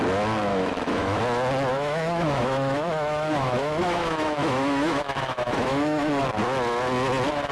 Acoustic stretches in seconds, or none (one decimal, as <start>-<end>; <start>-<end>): 0.0-0.5; 1.2-1.7; 6.2-7.5